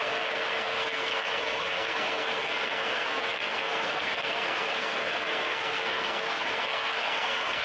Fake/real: fake